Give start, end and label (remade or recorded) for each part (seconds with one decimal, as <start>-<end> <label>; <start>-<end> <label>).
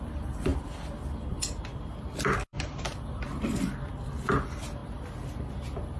0.0-4.8 remade; 4.8-6.0 recorded